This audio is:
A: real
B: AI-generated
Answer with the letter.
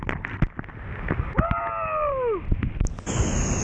A